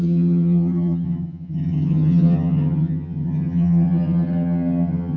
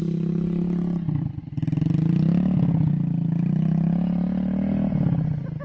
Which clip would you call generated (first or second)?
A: first